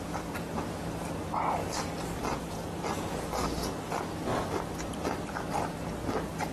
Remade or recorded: recorded